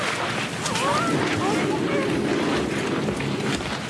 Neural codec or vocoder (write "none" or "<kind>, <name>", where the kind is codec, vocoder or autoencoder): none